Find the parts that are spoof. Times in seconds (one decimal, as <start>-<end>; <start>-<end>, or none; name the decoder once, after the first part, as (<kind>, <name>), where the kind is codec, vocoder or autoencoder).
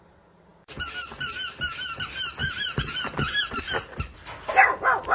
none